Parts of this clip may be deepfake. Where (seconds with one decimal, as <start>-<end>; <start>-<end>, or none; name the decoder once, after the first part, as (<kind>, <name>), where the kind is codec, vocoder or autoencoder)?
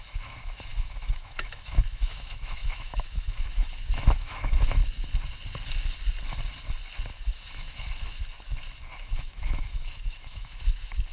0.0-4.8 (autoencoder, DAC-VAE); 7.1-8.2; 9.0-11.1